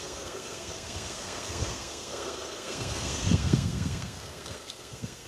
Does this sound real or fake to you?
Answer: fake